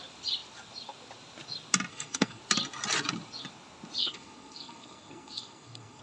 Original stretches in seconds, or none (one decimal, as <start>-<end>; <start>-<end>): 0.0-1.9; 2.4-4.0